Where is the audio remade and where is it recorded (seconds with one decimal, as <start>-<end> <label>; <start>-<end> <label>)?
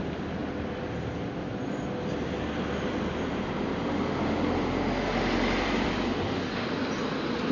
0.0-7.5 recorded